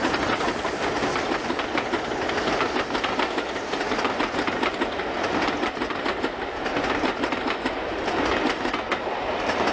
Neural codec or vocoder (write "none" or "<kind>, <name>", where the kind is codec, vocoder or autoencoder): none